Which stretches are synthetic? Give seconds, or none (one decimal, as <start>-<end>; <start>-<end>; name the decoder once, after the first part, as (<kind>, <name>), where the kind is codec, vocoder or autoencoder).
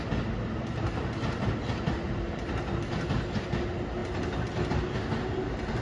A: none